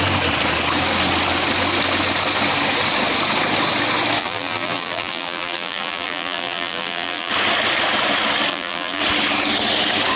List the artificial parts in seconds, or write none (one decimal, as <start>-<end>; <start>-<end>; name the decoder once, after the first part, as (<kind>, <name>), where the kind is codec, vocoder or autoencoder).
4.2-7.3 (vocoder, BigVGAN v2); 8.5-9.0